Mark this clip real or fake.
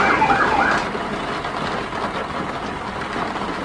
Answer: real